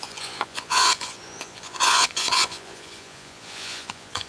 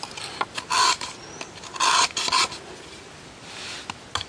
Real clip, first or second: second